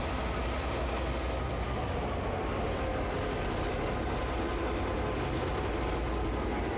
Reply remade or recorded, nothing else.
recorded